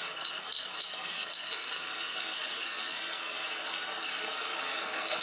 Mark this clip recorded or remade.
remade